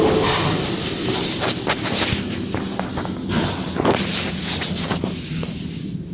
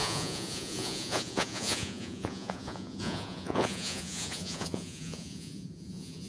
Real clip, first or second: first